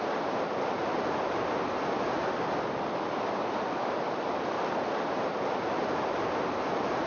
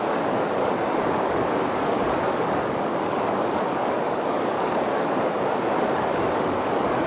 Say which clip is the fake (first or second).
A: second